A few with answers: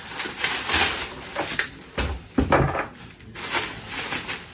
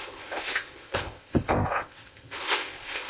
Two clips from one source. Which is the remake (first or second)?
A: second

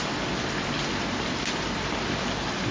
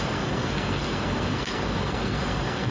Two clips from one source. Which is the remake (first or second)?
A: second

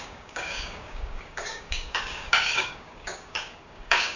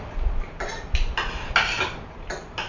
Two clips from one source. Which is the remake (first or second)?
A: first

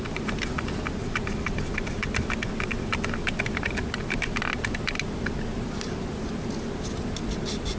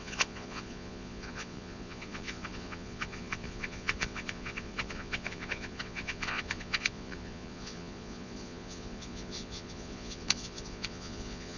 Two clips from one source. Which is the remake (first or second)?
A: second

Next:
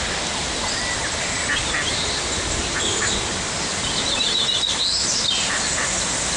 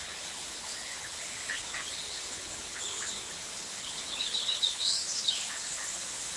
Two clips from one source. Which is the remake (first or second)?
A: second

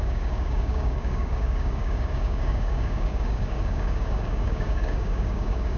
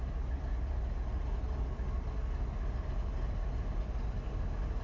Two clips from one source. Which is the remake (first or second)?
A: first